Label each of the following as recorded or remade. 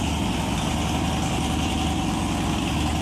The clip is remade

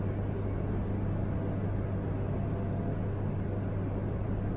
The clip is recorded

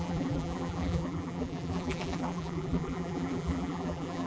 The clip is remade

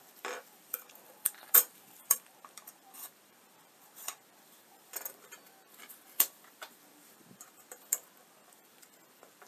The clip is remade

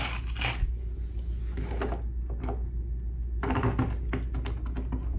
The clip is recorded